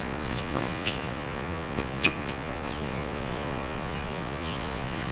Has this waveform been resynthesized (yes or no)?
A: yes